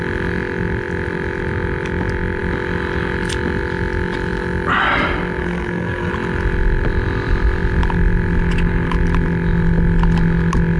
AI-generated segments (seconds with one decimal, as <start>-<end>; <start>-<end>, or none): 5.4-6.1